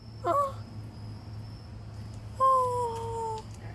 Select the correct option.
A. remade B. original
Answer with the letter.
B